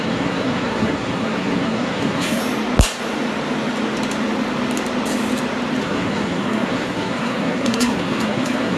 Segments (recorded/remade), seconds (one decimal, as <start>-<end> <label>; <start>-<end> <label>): 0.0-2.4 remade; 2.4-5.8 recorded; 5.8-8.8 remade